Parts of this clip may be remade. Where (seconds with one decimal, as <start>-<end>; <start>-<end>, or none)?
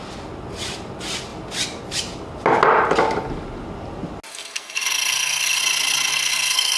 4.3-5.6; 6.1-6.8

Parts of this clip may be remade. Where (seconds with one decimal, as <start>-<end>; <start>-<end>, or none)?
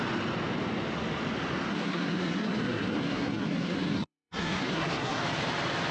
1.7-5.2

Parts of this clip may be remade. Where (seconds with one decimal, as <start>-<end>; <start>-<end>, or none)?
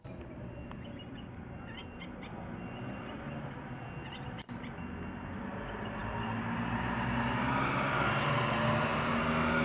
none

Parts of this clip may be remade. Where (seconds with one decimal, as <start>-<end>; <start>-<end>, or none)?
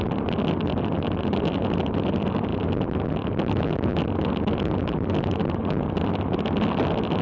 none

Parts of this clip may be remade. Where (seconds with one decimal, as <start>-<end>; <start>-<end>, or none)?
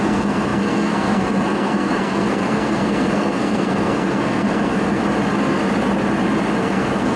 0.0-5.0; 6.6-7.2